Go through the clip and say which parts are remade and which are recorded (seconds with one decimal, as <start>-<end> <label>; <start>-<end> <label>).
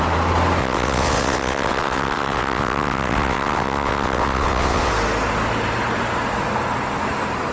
0.0-0.6 recorded; 0.6-4.9 remade; 4.9-7.5 recorded